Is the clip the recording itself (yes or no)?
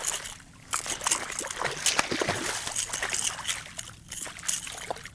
yes